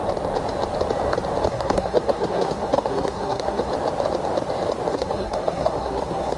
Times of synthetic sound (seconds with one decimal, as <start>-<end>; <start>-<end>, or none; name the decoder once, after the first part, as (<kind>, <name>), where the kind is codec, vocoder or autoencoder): 1.5-3.7 (codec, SNAC); 4.9-6.4